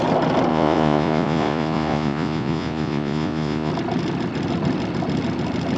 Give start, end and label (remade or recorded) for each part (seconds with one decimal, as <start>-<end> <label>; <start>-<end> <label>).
0.0-0.5 recorded; 0.5-3.7 remade; 3.7-5.8 recorded